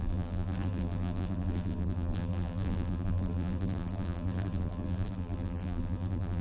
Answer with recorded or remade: remade